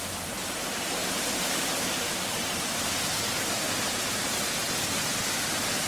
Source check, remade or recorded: remade